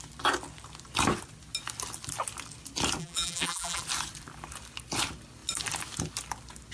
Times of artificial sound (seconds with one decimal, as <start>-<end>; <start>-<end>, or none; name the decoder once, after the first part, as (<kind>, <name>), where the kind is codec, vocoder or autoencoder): 3.0-3.8 (vocoder, BigVGAN v2)